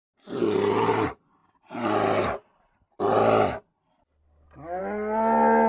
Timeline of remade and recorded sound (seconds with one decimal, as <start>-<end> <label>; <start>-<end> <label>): 0.0-5.7 recorded